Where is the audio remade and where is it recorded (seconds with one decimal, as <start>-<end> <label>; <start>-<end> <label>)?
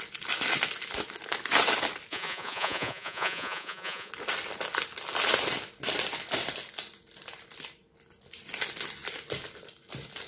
0.0-2.1 recorded; 2.1-4.1 remade; 4.1-10.3 recorded